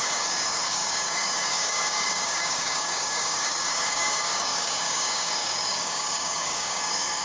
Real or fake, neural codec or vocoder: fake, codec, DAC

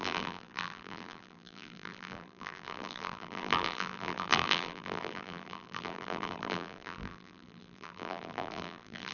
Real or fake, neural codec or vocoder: fake, vocoder, BigVGAN v2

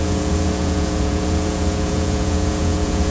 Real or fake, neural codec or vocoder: fake, vocoder, Vocos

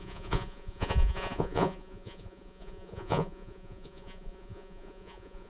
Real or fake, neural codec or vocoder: fake, vocoder, Vocos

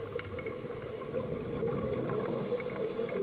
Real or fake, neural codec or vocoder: real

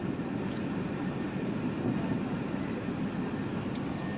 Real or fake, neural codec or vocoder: real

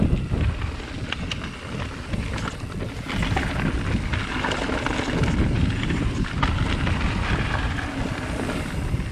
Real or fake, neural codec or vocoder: real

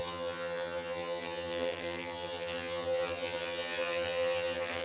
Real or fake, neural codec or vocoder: fake, vocoder, HiFi-GAN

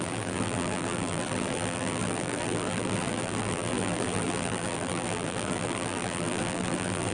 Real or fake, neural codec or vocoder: fake, vocoder, BigVGAN v2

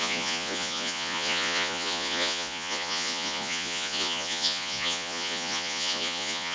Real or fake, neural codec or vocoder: fake, vocoder, Vocos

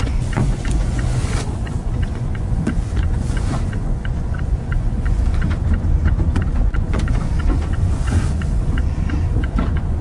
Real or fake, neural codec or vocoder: fake, vocoder, Vocos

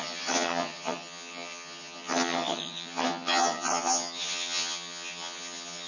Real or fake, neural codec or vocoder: fake, vocoder, HiFi-GAN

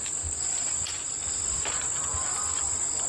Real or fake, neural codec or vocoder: real